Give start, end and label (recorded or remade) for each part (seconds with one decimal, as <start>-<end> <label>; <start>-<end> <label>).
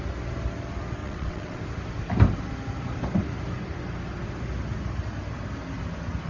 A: 0.0-1.0 recorded; 1.0-1.6 remade; 1.6-6.3 recorded